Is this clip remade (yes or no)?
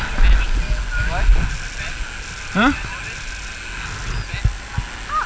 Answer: no